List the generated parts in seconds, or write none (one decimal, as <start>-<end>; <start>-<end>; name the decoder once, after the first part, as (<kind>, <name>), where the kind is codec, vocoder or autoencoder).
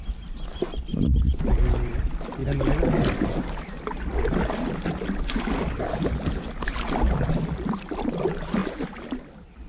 0.0-2.4 (vocoder, BigVGAN v2); 7.3-9.7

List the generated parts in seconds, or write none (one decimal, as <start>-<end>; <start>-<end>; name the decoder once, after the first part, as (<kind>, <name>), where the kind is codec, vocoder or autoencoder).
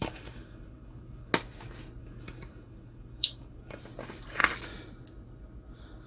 0.0-1.3 (codec, DAC); 2.0-3.8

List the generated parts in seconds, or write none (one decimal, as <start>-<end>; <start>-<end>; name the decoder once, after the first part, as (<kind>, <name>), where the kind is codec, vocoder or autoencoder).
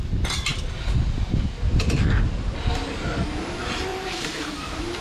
3.9-4.5 (vocoder, BigVGAN v2)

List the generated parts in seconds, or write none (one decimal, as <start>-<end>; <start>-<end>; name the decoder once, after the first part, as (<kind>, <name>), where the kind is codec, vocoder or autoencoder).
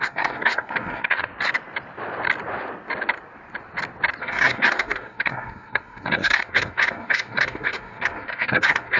0.0-1.3 (codec, SNAC); 4.2-9.0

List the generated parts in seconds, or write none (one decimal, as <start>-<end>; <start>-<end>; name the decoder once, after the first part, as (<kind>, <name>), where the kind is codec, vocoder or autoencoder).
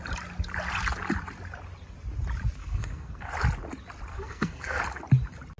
2.6-3.3 (codec, SNAC); 4.1-4.8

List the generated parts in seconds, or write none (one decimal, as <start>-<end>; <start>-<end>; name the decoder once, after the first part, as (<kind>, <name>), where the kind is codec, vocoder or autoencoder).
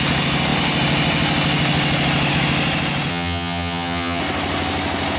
3.1-4.2 (vocoder, HiFi-GAN)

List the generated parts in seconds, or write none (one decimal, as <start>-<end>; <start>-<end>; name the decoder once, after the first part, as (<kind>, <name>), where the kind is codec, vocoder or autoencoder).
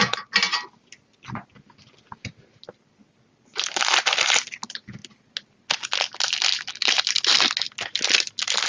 none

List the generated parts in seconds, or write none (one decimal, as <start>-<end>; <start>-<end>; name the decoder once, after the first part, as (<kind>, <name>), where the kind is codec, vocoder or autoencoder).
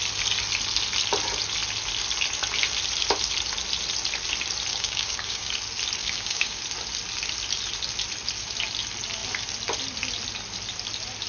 4.7-5.5 (codec, DAC); 6.0-6.6